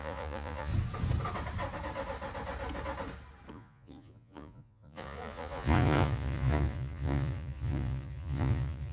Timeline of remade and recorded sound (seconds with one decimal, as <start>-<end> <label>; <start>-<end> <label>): 0.0-0.7 remade; 0.7-3.5 recorded; 3.5-8.9 remade